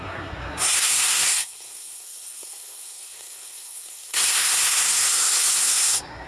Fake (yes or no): yes